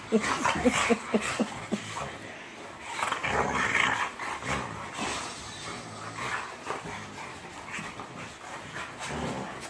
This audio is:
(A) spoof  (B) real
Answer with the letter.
B